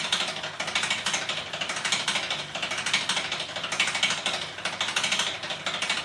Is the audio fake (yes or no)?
no